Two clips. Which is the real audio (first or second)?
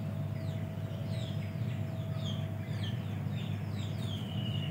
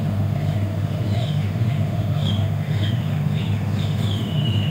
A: first